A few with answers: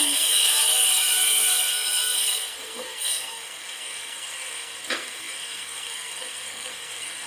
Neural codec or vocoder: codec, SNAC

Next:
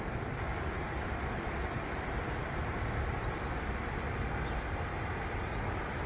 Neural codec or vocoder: none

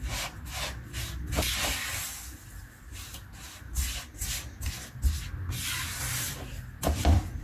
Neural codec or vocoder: none